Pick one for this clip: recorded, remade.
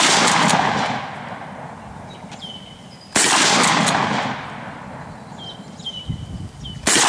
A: recorded